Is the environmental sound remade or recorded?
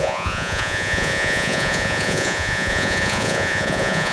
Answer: remade